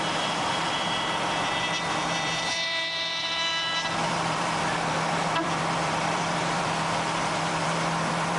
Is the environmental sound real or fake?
fake